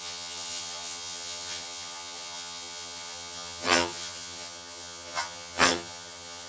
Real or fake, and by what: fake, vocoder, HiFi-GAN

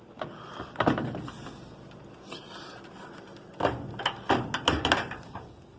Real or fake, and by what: real